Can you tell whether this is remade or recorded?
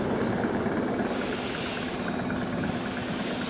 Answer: recorded